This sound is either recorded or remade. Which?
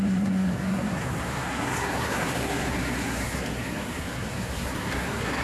remade